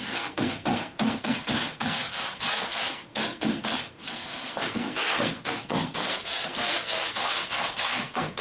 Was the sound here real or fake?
fake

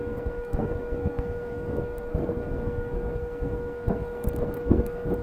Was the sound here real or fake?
fake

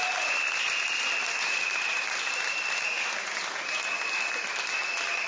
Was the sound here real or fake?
real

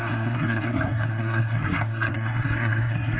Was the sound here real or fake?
fake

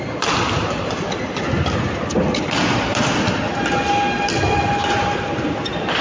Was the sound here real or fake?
real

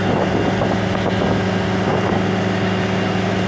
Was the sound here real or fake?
real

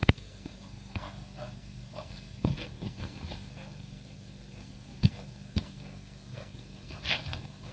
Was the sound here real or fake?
fake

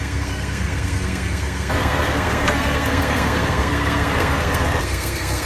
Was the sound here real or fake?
fake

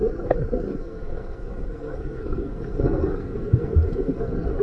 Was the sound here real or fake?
fake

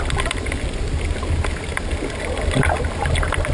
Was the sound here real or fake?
real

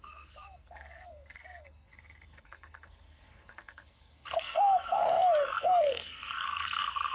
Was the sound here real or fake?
fake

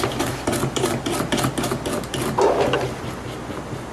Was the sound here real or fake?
real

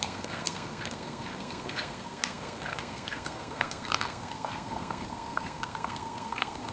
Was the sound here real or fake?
fake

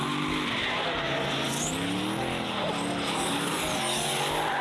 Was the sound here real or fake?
real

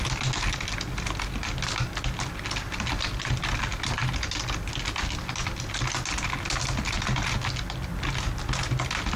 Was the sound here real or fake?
real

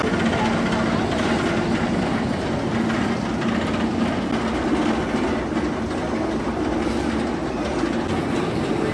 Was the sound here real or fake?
real